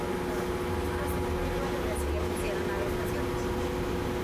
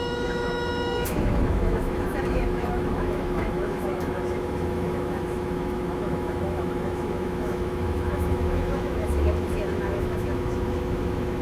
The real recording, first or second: first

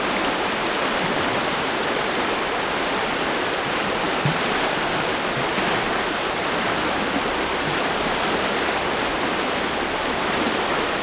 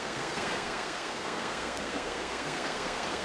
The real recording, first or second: first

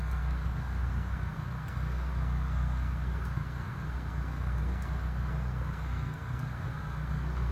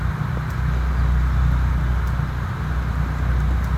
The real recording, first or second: second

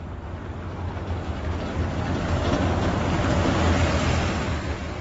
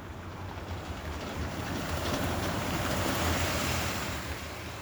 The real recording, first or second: first